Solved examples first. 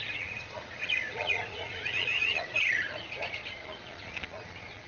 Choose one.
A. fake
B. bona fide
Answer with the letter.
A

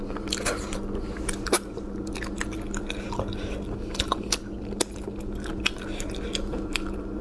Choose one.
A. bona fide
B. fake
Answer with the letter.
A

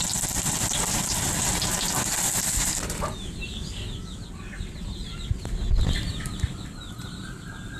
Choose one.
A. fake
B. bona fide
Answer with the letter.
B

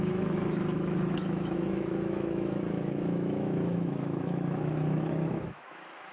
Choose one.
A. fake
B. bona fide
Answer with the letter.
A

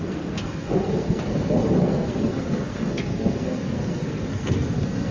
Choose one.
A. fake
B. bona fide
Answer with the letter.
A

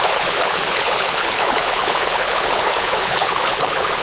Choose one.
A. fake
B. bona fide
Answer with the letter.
A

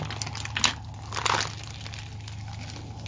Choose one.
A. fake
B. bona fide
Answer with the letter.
B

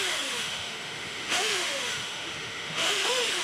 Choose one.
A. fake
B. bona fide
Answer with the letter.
A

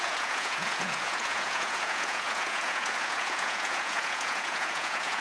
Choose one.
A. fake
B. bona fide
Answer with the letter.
A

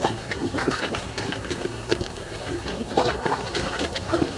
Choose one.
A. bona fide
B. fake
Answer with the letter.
B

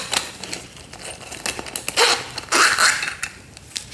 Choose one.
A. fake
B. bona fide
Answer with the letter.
B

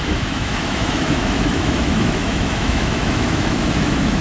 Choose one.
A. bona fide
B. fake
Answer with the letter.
B